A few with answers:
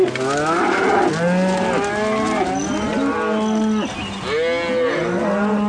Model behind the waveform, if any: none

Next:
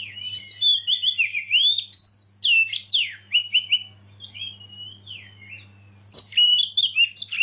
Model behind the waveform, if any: none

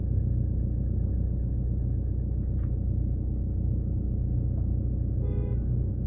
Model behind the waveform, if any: none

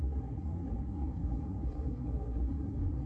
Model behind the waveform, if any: codec, SNAC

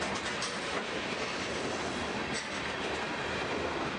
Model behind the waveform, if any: none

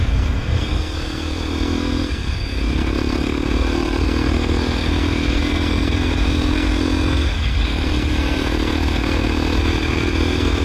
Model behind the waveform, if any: codec, SNAC